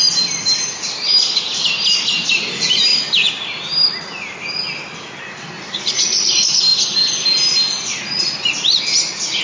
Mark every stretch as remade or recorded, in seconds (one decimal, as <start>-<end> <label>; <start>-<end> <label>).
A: 0.0-2.9 remade; 2.9-5.4 recorded; 5.4-6.7 remade; 6.7-9.4 recorded